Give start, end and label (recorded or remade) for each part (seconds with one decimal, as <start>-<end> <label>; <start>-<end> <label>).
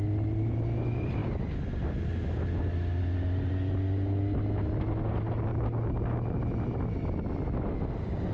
0.0-8.3 recorded